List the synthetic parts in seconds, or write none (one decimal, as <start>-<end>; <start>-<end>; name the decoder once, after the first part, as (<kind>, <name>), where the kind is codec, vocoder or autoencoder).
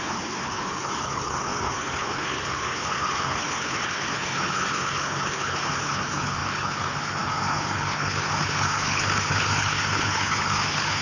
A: 0.0-11.0 (codec, HILCodec)